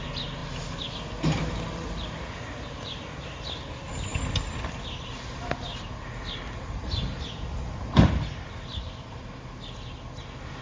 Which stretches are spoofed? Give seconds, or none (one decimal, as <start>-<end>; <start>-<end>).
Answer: none